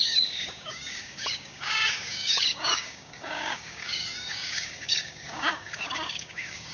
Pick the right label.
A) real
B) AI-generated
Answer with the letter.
B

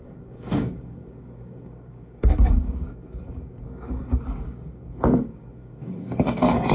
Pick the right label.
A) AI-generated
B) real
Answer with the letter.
A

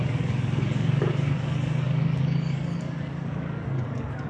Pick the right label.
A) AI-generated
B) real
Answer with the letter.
A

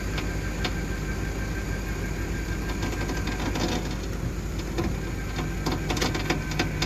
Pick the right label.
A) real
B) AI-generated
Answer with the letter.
A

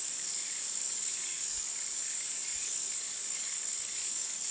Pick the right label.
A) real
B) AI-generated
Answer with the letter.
B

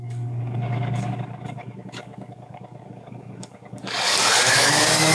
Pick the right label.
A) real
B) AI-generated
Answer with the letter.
B